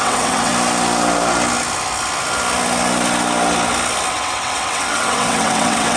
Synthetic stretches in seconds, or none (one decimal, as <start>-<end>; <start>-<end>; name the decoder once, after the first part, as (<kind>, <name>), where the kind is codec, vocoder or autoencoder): 0.0-0.5 (vocoder, WaveNeXt); 4.1-6.0